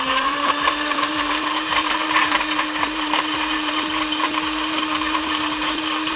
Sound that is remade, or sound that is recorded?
remade